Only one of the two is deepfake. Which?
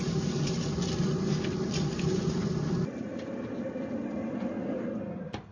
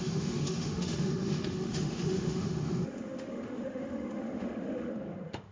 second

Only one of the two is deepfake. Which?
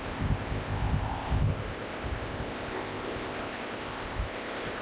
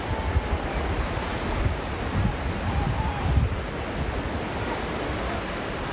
first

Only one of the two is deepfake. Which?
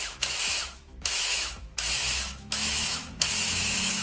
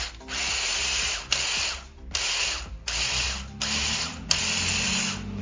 first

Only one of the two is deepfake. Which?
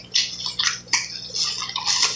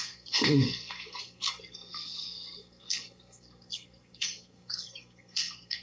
second